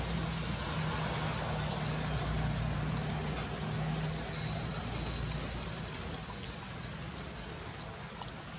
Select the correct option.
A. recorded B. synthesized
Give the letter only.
A